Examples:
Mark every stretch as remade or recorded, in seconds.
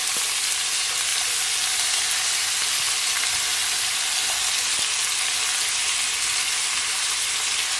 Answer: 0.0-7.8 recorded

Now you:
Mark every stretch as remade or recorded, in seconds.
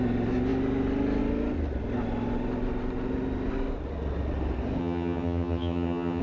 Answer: 0.0-4.8 recorded; 4.8-6.2 remade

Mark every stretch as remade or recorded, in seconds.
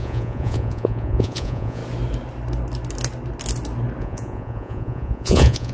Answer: 0.0-1.8 remade; 1.8-4.0 recorded; 4.0-5.7 remade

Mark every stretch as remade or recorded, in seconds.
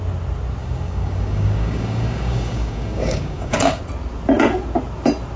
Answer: 0.0-0.6 recorded; 0.6-3.8 remade; 3.8-5.4 recorded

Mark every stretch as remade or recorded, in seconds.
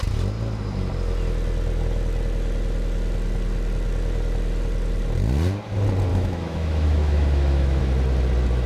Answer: 0.0-6.1 recorded; 6.1-7.8 remade; 7.8-8.7 recorded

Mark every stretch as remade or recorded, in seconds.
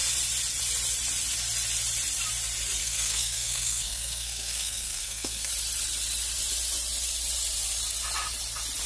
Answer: 0.0-2.8 recorded; 2.8-5.5 remade; 5.5-8.9 recorded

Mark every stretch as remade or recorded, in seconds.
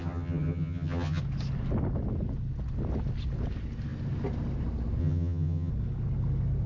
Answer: 0.0-1.2 remade; 1.2-5.0 recorded; 5.0-5.7 remade; 5.7-6.7 recorded